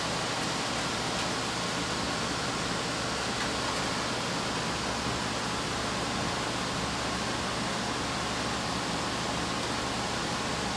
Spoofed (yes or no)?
no